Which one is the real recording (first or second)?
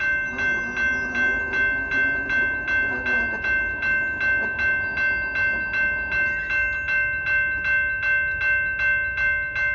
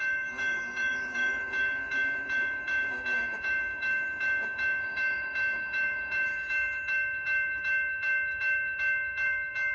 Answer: first